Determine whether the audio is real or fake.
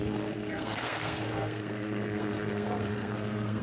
fake